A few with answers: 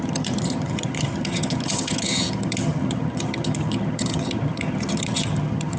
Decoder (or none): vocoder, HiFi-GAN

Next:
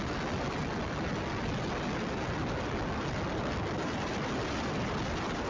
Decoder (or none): none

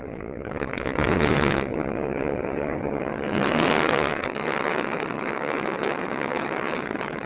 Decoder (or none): vocoder, WaveNeXt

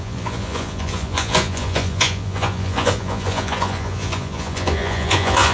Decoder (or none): vocoder, Vocos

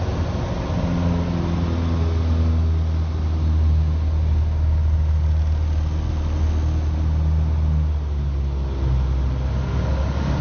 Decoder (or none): none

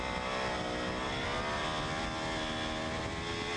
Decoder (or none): none